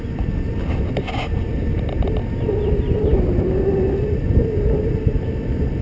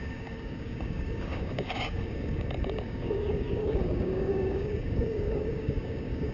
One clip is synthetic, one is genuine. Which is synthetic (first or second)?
second